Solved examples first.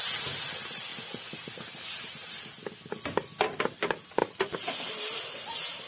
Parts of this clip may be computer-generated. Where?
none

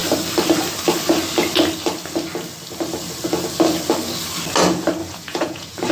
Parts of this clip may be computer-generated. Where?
5.0-5.9 (vocoder, Vocos)

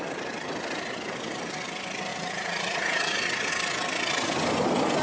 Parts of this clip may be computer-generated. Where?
2.1-3.5 (vocoder, Vocos)

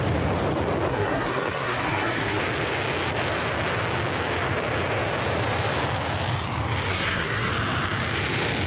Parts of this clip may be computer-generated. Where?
0.9-2.4 (codec, SNAC); 6.9-7.5